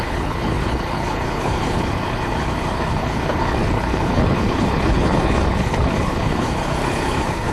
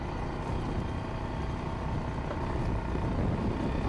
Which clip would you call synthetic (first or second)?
first